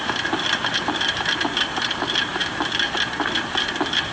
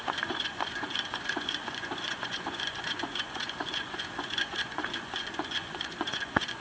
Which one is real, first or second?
first